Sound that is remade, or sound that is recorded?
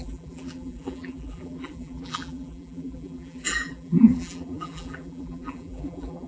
remade